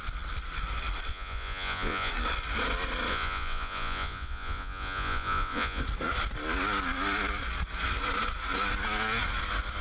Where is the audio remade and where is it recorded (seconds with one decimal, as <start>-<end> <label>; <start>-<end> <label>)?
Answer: 0.0-1.1 recorded; 1.1-2.1 remade; 2.1-3.1 recorded; 3.1-5.8 remade; 5.8-9.8 recorded